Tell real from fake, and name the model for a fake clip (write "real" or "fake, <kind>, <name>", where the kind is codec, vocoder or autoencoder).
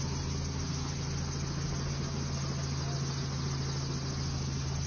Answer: real